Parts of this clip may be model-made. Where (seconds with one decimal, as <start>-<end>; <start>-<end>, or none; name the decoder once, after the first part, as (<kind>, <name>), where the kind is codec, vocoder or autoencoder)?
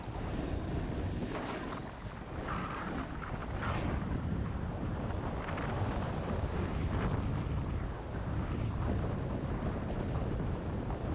3.4-6.5 (vocoder, BigVGAN v2)